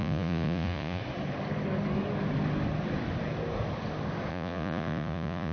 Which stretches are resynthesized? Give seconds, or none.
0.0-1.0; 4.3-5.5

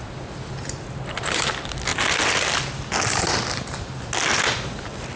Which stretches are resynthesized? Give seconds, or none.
none

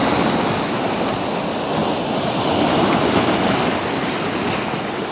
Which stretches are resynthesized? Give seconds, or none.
none

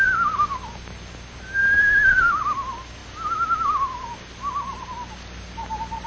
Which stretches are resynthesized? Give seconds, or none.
none

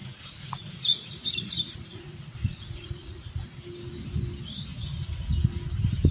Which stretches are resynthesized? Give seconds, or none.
0.0-3.3